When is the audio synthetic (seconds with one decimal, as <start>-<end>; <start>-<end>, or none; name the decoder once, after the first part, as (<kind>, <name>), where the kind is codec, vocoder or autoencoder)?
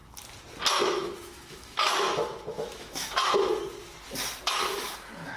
0.8-3.5 (autoencoder, DAC-VAE); 4.6-5.4